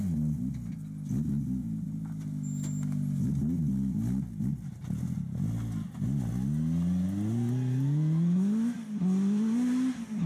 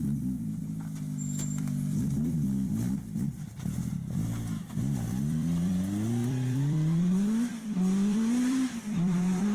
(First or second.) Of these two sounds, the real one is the first